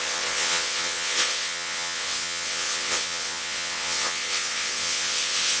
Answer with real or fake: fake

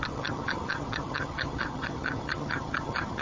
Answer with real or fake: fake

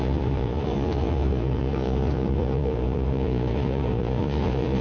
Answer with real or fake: fake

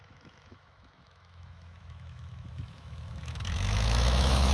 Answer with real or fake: fake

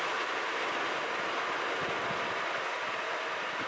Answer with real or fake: real